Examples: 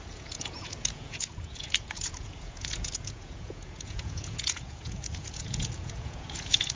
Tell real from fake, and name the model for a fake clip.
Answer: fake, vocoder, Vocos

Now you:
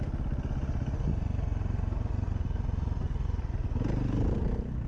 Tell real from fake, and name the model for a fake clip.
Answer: real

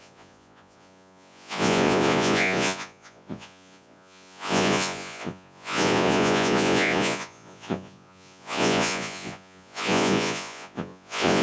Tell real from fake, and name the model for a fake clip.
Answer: fake, vocoder, Vocos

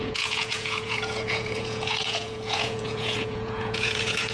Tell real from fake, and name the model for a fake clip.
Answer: fake, vocoder, Vocos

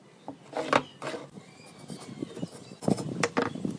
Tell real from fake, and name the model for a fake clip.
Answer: real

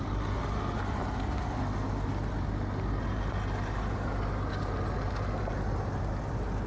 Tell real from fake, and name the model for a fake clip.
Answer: real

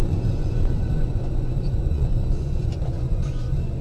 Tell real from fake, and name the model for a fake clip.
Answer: fake, vocoder, Vocos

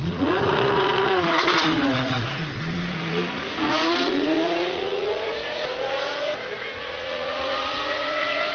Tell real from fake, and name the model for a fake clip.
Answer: fake, vocoder, Vocos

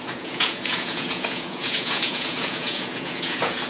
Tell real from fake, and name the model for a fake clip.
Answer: fake, vocoder, Vocos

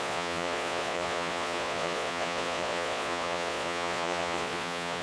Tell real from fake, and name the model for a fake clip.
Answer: fake, vocoder, Vocos